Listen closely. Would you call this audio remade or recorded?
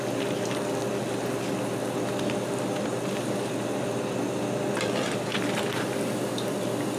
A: recorded